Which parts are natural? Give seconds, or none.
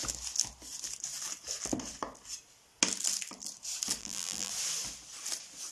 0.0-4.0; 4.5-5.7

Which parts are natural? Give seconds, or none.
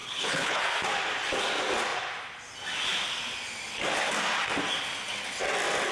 0.6-5.9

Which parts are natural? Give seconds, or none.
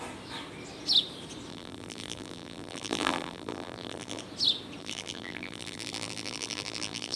0.0-1.5; 4.2-4.8